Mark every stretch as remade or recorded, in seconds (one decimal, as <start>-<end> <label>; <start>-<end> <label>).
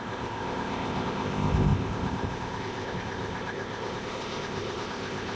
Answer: 0.0-5.4 remade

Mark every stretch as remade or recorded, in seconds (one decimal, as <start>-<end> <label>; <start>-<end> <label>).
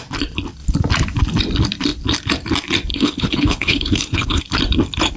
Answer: 0.0-2.9 recorded; 2.9-4.4 remade; 4.4-5.2 recorded